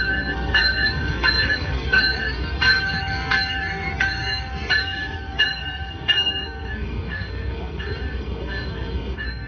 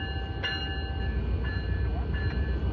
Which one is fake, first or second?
first